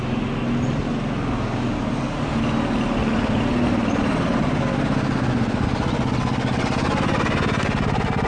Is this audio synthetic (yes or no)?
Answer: no